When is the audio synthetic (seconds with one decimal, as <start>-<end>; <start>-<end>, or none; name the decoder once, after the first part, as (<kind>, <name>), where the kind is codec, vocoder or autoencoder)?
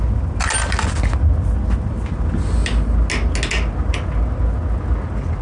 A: none